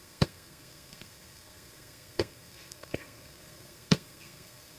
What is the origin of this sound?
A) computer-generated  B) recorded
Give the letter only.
A